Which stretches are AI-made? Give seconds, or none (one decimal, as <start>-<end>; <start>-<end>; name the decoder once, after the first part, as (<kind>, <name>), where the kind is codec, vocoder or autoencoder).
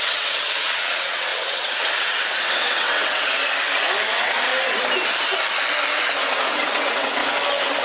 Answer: 0.0-3.4 (vocoder, WaveNeXt); 4.1-4.5; 6.3-7.2